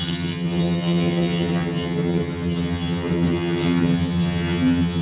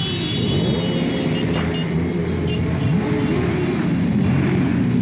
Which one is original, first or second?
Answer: second